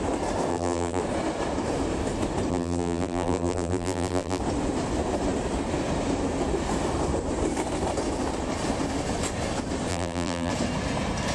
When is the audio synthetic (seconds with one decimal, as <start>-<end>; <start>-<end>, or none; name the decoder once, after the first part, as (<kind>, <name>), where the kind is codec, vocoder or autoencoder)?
0.5-1.0 (vocoder, BigVGAN v2); 2.5-4.4; 9.9-10.5